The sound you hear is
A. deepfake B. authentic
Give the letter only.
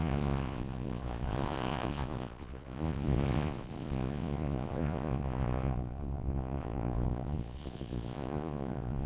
A